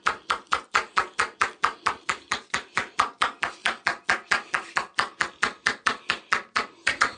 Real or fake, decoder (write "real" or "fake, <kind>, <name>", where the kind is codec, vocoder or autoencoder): real